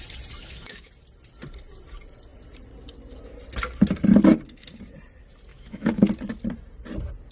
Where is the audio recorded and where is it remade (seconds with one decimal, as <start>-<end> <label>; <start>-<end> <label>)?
0.0-0.4 recorded; 0.4-0.9 remade; 0.9-5.5 recorded; 5.5-6.1 remade; 6.1-7.3 recorded